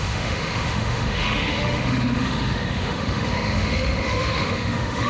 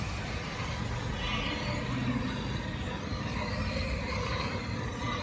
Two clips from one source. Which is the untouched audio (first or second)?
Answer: second